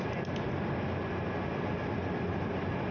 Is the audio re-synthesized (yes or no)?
no